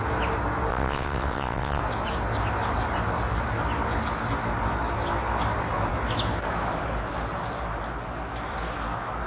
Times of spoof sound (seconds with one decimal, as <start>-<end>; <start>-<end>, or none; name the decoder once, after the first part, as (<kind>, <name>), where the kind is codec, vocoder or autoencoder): 0.7-1.8 (vocoder, WaveNeXt)